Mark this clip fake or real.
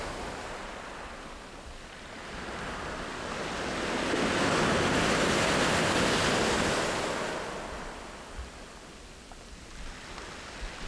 real